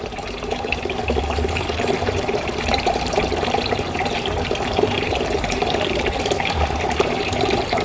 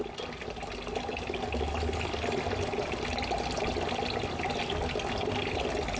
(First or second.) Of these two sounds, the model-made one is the first